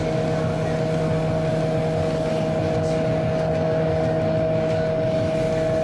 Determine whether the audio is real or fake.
real